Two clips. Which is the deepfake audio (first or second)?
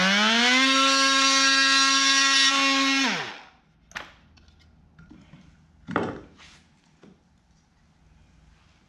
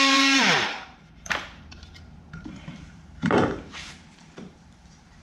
second